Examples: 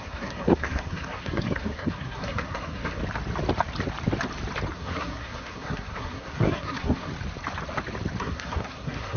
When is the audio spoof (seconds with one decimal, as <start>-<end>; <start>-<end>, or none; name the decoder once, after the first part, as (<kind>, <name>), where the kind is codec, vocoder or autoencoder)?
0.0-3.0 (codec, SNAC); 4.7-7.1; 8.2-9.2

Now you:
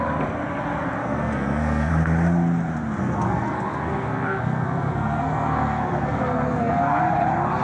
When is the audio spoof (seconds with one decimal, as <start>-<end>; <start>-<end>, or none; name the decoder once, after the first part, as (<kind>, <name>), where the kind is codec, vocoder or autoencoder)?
1.0-1.9 (codec, SNAC); 3.0-7.0

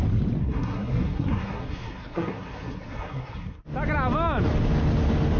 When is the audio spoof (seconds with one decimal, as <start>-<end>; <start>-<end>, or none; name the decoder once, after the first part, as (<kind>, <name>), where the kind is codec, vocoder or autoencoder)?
0.4-3.6 (codec, SNAC)